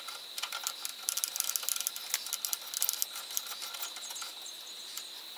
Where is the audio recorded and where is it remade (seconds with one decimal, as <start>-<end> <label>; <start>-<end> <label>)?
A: 0.0-5.4 recorded